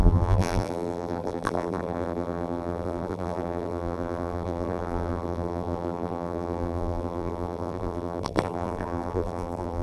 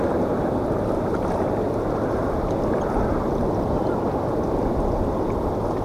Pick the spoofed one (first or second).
first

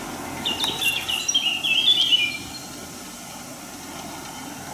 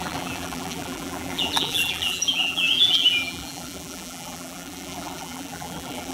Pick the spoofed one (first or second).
second